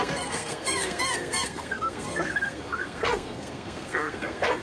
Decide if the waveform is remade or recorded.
remade